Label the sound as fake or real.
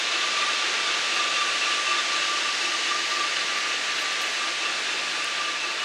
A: real